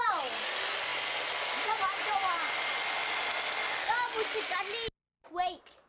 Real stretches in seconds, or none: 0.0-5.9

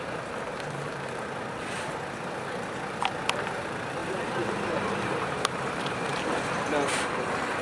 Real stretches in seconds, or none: 0.0-0.5; 1.1-4.0; 6.1-7.6

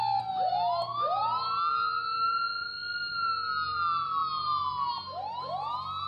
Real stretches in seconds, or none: 0.0-6.1

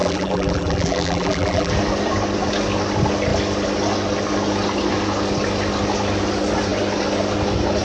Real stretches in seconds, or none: 1.7-7.8